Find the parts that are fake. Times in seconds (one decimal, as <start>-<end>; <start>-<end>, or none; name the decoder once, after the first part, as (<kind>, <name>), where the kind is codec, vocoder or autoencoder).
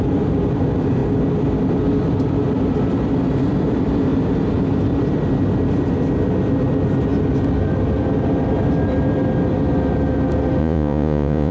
10.6-11.5 (vocoder, Vocos)